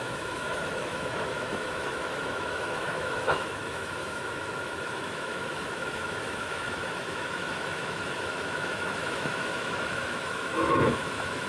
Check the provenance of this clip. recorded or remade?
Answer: remade